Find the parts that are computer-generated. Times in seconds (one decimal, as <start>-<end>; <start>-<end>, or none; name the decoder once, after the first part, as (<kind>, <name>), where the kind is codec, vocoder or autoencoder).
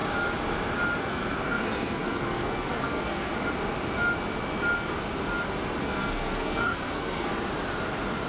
1.0-3.3 (codec, SNAC); 5.8-7.3